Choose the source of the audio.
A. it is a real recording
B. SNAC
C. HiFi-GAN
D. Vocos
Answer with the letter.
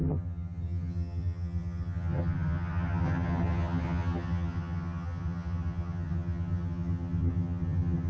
C